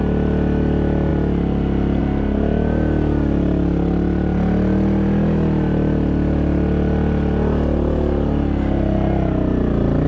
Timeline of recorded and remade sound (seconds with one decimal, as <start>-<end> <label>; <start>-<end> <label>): 0.0-10.1 recorded